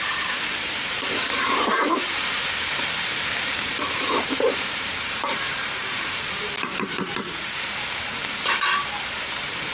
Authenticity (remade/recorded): remade